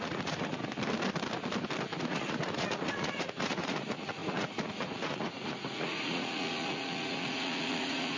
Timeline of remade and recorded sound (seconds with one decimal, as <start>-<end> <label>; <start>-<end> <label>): 0.0-0.6 remade; 0.6-2.0 recorded; 2.0-8.2 remade

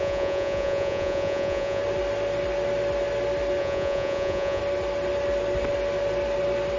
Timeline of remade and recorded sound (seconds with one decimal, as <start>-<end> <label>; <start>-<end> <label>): 0.0-1.8 remade; 1.8-3.6 recorded; 3.6-4.6 remade; 4.6-6.8 recorded

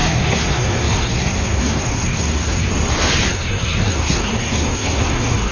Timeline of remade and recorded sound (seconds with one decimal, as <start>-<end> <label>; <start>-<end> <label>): 0.0-2.7 remade; 2.7-3.3 recorded; 3.3-5.5 remade

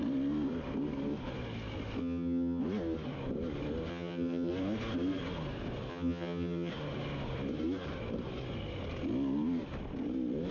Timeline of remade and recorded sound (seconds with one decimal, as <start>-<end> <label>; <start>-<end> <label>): 0.0-2.0 recorded; 2.0-2.6 remade; 2.6-3.9 recorded; 3.9-4.5 remade; 4.5-5.9 recorded; 5.9-6.7 remade; 6.7-10.5 recorded

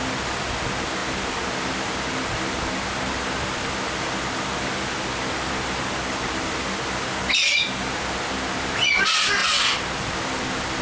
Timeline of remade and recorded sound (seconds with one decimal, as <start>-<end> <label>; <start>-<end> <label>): 0.0-10.8 recorded

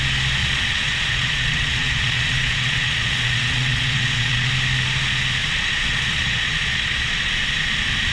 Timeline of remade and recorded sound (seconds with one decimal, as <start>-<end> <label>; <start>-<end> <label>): 0.0-0.4 recorded; 0.4-4.5 remade; 4.5-5.4 recorded; 5.4-7.3 remade; 7.3-8.1 recorded

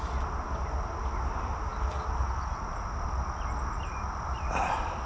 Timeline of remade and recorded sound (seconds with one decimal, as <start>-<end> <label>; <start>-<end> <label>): 0.0-5.1 recorded

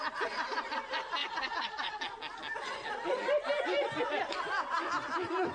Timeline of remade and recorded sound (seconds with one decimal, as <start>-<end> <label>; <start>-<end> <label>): 0.0-1.2 recorded; 1.2-2.0 remade; 2.0-5.5 recorded